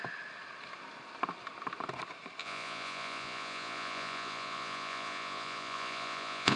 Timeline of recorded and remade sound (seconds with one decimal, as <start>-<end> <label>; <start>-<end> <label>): 0.0-2.4 recorded; 2.4-6.6 remade